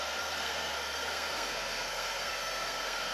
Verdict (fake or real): fake